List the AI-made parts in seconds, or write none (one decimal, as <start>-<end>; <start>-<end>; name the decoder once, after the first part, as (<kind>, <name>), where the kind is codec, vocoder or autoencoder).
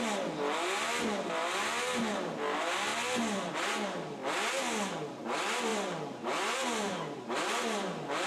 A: none